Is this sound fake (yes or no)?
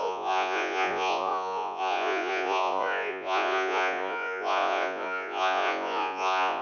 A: yes